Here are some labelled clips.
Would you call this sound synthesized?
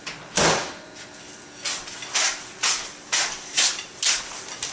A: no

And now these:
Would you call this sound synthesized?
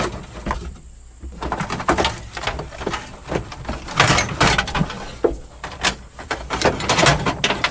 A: no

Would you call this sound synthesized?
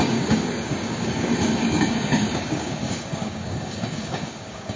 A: yes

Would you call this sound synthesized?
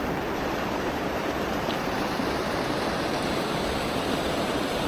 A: yes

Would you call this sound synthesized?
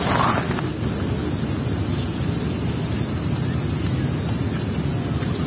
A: no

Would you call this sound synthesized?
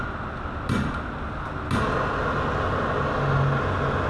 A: no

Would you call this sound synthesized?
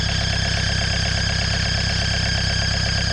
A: no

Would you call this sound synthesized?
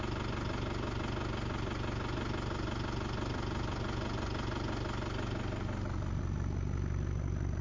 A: no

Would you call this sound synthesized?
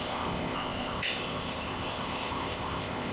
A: yes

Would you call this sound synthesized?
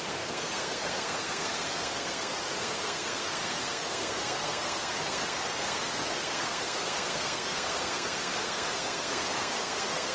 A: yes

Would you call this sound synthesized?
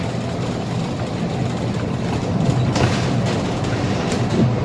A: no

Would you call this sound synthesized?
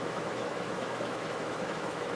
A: yes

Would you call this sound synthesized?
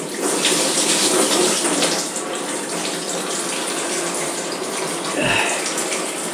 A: yes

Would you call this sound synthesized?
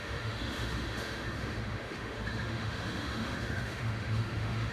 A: yes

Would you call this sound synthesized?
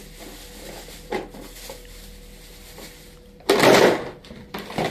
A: no